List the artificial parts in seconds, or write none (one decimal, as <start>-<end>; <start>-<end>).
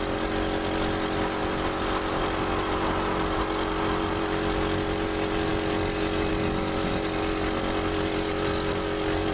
none